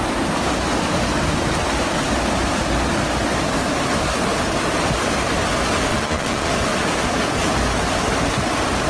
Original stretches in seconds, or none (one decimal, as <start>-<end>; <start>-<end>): 0.0-5.9; 6.5-8.9